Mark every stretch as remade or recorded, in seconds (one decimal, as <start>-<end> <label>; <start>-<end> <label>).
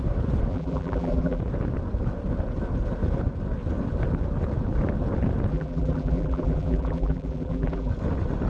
0.0-0.5 recorded; 0.5-1.4 remade; 1.4-5.5 recorded; 5.5-7.9 remade; 7.9-8.5 recorded